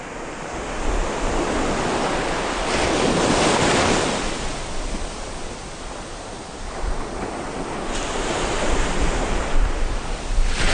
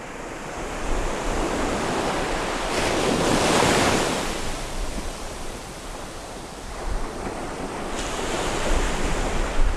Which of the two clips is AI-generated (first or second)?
second